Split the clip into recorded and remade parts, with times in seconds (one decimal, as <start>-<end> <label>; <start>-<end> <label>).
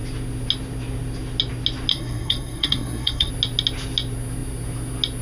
0.0-1.9 recorded; 1.9-3.3 remade; 3.3-5.2 recorded